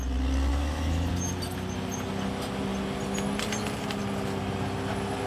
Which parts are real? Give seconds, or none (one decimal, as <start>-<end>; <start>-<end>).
0.0-0.5; 1.1-5.3